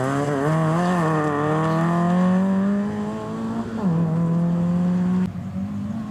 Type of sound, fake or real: real